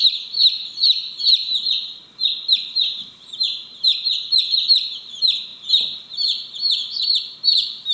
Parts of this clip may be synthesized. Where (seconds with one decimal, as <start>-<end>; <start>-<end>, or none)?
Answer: 0.0-2.0; 2.7-5.5; 7.2-7.9